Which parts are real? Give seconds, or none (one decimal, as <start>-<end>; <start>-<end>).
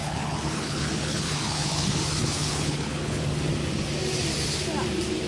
3.2-5.3